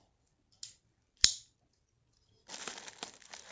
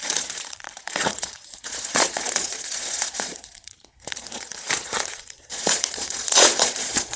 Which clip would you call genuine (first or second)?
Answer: first